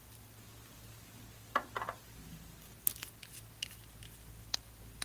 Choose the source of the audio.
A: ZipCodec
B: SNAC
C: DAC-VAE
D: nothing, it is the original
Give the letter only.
D